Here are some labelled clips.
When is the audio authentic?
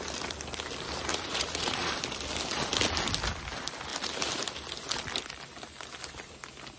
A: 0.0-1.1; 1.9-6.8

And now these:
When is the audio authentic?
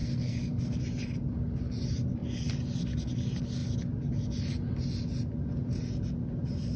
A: 0.8-6.8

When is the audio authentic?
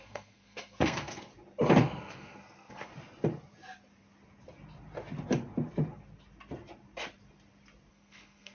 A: 1.3-1.8; 2.9-7.9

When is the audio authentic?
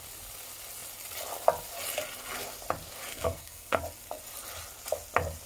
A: 0.0-3.1; 3.8-5.5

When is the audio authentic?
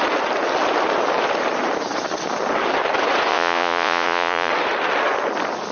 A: 0.0-3.3; 4.5-5.7